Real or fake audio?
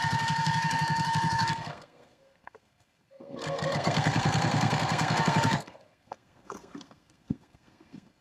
fake